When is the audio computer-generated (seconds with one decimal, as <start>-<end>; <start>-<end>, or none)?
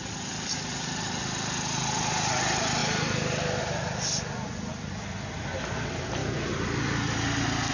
none